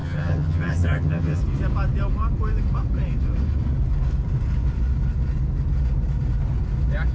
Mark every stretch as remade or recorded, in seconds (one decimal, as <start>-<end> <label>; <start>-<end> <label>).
0.0-1.4 remade; 1.4-7.1 recorded